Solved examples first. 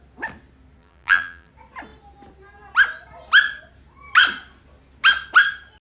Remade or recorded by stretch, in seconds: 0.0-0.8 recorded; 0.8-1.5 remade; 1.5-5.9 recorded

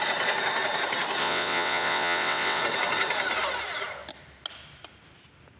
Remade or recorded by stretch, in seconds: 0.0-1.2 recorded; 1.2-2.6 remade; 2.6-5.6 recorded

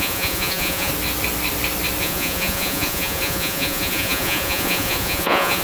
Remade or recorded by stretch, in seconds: 0.0-0.9 remade; 0.9-2.0 recorded; 2.0-5.6 remade

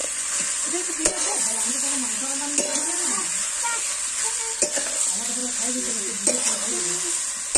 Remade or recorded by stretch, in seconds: 0.0-1.7 remade; 1.7-2.7 recorded; 2.7-3.6 remade; 3.6-7.6 recorded

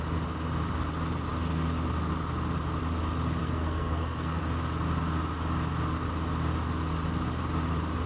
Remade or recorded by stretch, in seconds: 0.0-3.4 recorded; 3.4-4.4 remade; 4.4-8.1 recorded